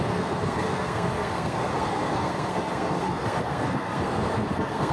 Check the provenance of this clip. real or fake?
fake